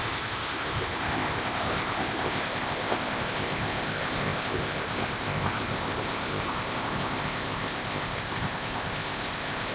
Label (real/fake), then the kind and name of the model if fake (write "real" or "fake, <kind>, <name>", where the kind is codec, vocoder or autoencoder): fake, codec, ZipCodec